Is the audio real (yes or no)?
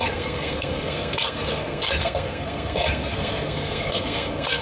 no